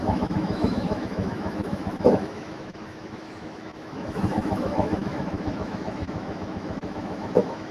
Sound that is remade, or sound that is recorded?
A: remade